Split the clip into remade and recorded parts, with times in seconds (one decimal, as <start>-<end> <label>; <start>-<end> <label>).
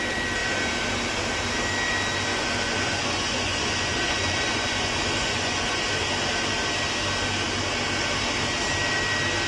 0.0-2.3 recorded; 2.3-5.8 remade; 5.8-9.5 recorded